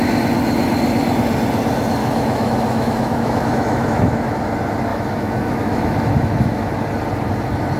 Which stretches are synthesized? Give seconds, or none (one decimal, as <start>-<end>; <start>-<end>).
2.0-4.4; 4.9-6.7